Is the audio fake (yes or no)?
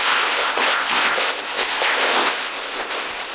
yes